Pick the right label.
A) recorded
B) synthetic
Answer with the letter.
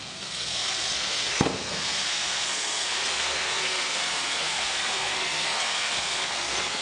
B